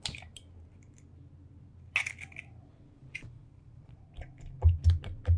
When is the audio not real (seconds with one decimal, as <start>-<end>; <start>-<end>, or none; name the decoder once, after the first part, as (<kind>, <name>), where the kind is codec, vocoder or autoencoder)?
2.7-4.1 (vocoder, BigVGAN v2)